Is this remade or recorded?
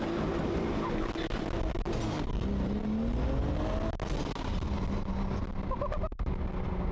recorded